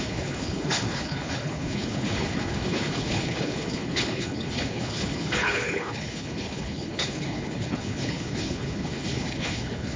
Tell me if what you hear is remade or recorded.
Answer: remade